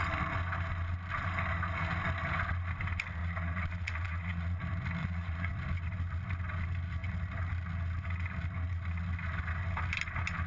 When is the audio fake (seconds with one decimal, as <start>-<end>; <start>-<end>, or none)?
3.2-4.6; 5.0-5.5